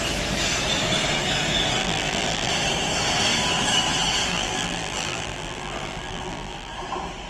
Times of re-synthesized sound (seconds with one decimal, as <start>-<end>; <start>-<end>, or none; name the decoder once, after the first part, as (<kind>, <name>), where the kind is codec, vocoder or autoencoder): 1.8-2.5 (vocoder, BigVGAN v2); 4.3-6.7